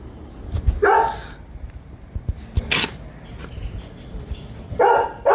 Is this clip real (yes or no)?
yes